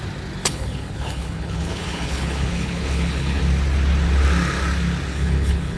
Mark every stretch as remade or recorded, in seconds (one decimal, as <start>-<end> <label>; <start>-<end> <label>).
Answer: 0.0-0.4 recorded; 0.4-3.4 remade; 3.4-5.1 recorded; 5.1-5.8 remade